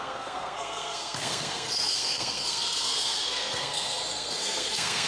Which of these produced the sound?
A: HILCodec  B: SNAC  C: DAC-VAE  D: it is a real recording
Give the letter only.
B